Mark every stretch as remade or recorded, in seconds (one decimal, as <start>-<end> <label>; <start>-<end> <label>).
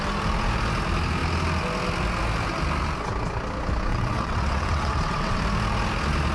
0.0-3.9 recorded; 3.9-5.4 remade; 5.4-6.3 recorded